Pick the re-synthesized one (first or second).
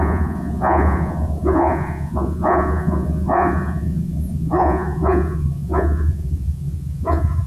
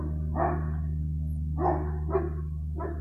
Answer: first